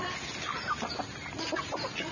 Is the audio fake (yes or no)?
no